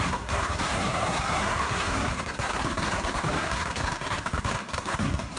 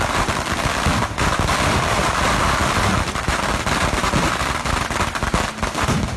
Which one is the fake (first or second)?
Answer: first